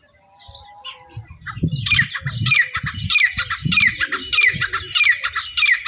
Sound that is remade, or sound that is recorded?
remade